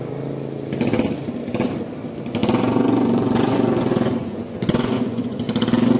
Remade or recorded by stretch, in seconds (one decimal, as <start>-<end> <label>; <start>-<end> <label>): 0.0-2.4 recorded; 2.4-5.4 remade; 5.4-6.0 recorded